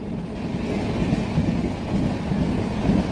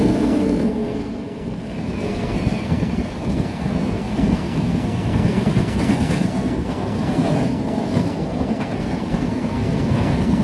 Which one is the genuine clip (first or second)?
first